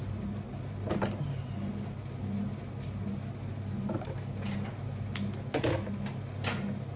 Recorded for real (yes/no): yes